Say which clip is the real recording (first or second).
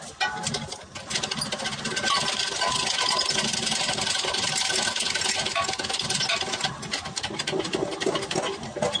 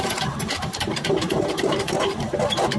first